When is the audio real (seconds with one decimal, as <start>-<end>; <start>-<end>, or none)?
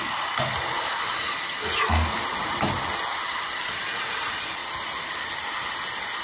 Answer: 0.0-6.2